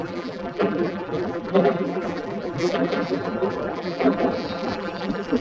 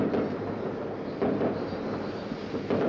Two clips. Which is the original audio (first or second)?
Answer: second